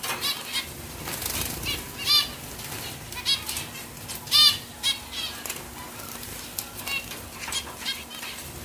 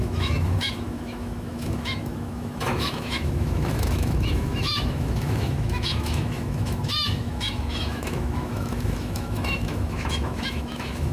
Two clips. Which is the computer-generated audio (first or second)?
second